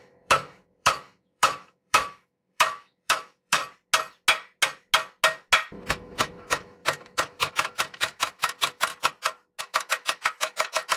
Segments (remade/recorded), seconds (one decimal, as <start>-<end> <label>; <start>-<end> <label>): 0.0-3.6 remade; 3.6-5.9 recorded; 5.9-8.9 remade; 8.9-9.6 recorded; 9.6-11.0 remade